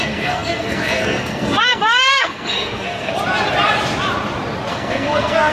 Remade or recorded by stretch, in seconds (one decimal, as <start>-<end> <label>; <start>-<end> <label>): 0.0-3.1 remade; 3.1-4.7 recorded; 4.7-5.5 remade

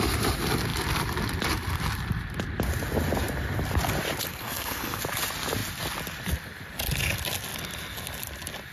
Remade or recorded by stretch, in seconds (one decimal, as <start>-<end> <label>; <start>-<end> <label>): 0.0-4.3 recorded; 4.3-5.0 remade; 5.0-8.7 recorded